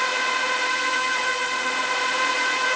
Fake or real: fake